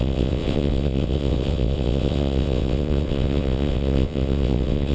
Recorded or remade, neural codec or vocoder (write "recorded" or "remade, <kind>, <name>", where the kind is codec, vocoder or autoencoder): remade, vocoder, WaveNeXt